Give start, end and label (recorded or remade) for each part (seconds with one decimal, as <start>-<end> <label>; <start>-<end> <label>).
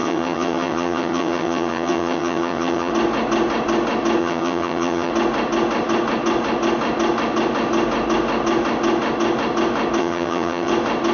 0.0-2.9 remade; 2.9-4.2 recorded; 4.2-5.1 remade; 5.1-10.0 recorded; 10.0-10.7 remade; 10.7-11.1 recorded